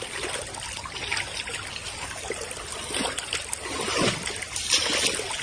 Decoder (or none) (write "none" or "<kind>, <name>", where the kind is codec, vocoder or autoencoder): none